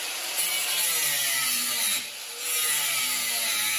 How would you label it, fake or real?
real